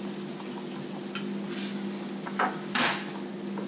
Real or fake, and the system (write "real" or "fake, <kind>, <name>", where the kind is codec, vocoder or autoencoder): real